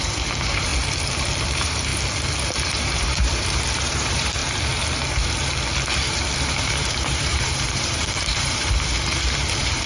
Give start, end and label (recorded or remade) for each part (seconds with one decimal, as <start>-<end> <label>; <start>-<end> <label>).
0.0-0.7 remade; 0.7-1.5 recorded; 1.5-1.9 remade; 1.9-2.7 recorded; 2.7-4.4 remade; 4.4-6.5 recorded; 6.5-9.9 remade